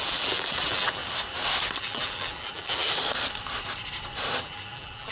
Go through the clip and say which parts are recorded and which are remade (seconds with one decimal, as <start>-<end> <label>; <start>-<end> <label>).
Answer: 0.0-1.0 remade; 1.0-1.8 recorded; 1.8-2.8 remade; 2.8-4.4 recorded; 4.4-5.1 remade